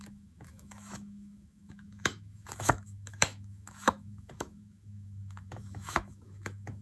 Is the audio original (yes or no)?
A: no